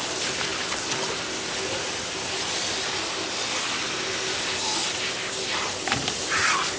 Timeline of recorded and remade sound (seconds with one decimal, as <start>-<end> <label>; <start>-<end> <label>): 0.0-6.8 recorded